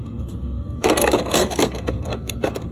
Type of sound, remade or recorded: remade